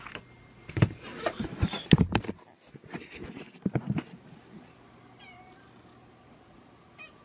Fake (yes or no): no